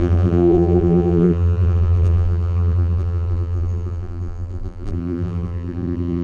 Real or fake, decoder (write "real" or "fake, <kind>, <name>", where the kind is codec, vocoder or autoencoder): fake, vocoder, BigVGAN v2